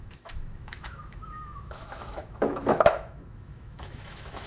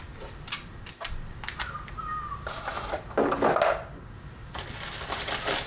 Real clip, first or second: second